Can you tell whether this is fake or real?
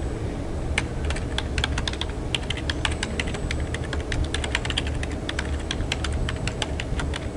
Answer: real